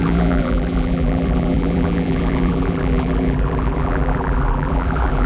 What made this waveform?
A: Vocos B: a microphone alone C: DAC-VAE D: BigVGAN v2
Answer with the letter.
D